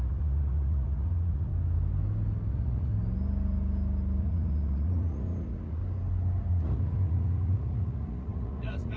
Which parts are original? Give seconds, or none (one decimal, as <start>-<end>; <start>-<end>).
1.5-2.5; 2.9-4.2; 5.8-6.5